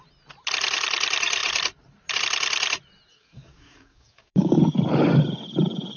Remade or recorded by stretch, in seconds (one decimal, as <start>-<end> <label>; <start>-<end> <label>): 0.0-3.1 recorded; 3.1-4.6 remade; 4.6-6.0 recorded